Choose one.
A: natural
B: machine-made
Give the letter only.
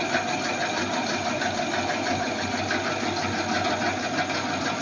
A